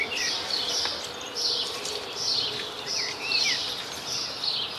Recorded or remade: recorded